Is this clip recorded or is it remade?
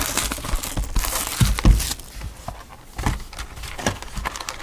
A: recorded